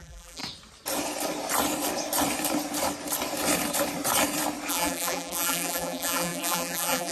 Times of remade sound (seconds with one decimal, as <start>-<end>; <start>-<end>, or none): 0.0-0.4; 4.7-7.1